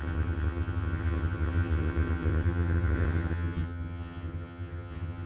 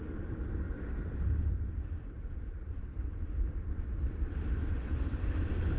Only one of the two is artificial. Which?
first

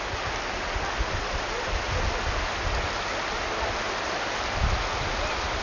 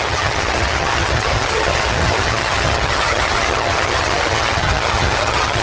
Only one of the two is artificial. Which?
second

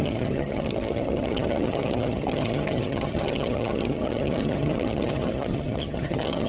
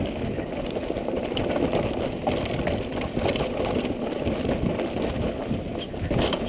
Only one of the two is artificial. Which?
first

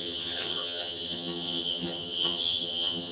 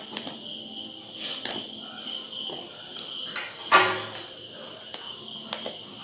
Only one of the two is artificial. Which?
first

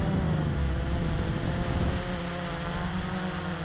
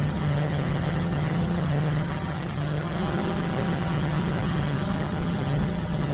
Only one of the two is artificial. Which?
second